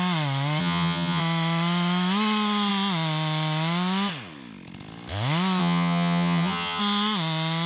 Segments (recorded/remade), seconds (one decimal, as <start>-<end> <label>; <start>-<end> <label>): 0.0-0.6 recorded; 0.6-1.2 remade; 1.2-5.6 recorded; 5.6-6.8 remade; 6.8-7.7 recorded